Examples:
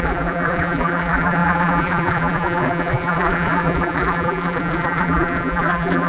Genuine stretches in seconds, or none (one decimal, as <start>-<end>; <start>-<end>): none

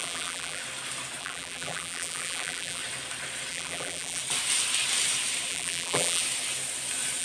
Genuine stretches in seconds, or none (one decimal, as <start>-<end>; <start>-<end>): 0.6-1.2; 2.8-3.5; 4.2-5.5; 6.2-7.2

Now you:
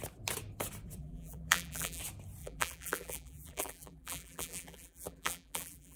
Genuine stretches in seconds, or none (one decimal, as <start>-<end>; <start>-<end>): 0.0-1.0; 2.0-2.4